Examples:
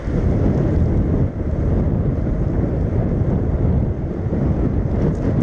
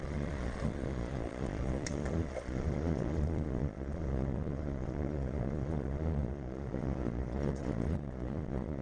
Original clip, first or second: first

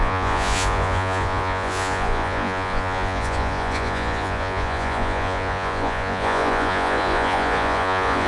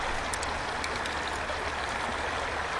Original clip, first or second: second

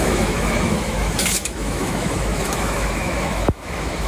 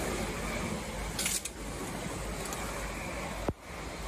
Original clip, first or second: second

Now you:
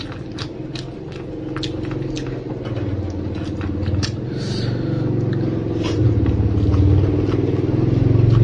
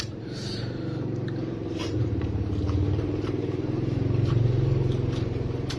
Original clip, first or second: first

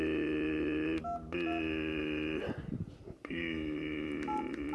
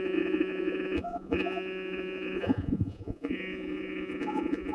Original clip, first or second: first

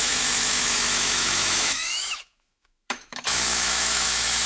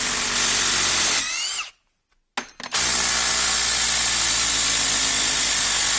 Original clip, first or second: second